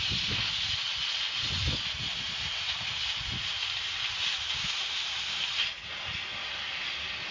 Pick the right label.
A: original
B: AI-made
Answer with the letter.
A